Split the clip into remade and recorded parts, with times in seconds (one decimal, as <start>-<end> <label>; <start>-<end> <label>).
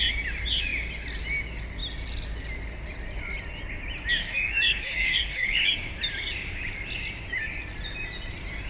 0.0-4.2 recorded; 4.2-5.9 remade; 5.9-8.7 recorded